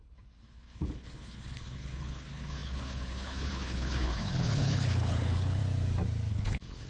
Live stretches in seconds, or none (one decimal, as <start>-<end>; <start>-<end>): 5.6-6.3